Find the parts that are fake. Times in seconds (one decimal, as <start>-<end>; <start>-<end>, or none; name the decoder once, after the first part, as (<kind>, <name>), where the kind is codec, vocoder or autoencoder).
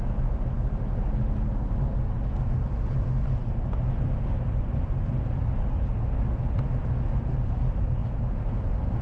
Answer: none